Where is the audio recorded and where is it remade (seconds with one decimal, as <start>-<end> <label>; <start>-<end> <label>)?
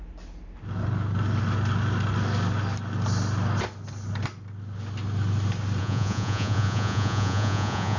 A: 0.0-5.8 recorded; 5.8-8.0 remade